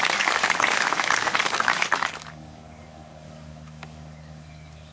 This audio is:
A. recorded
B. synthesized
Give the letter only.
B